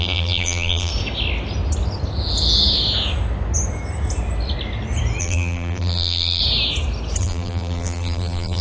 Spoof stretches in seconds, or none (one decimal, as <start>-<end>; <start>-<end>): 0.0-0.9; 5.2-6.4; 7.2-8.6